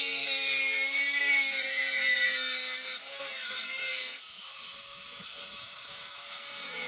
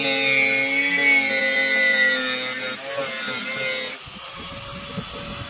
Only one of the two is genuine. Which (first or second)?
second